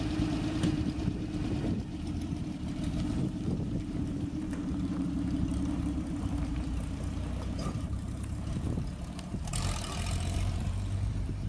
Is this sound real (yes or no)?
no